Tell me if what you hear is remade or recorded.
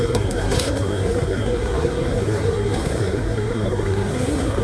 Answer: remade